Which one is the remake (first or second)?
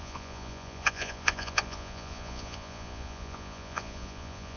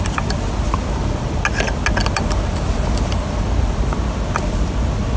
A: first